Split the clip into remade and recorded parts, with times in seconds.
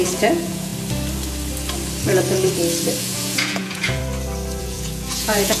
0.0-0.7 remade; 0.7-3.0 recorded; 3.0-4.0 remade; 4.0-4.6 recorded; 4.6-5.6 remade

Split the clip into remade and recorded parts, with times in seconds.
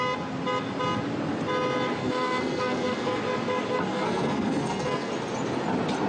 0.0-2.0 recorded; 2.0-3.2 remade; 3.2-3.9 recorded; 3.9-5.1 remade; 5.1-6.1 recorded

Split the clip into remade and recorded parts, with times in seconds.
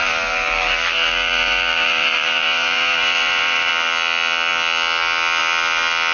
0.0-3.7 remade; 3.7-6.1 recorded